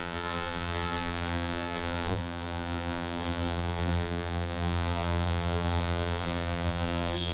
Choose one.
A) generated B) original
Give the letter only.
A